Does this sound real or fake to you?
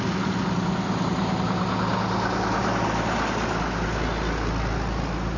real